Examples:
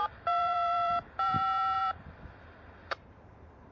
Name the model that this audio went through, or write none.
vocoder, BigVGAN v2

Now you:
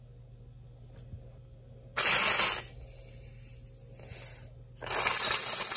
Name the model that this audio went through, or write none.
none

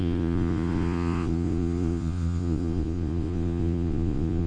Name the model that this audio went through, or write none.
vocoder, Vocos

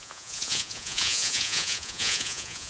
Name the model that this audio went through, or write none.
vocoder, Vocos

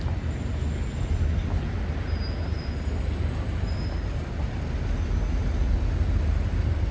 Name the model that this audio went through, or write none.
none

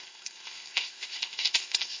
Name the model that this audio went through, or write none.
codec, ZipCodec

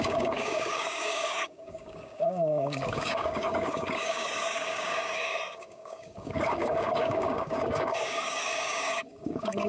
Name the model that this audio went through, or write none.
codec, DAC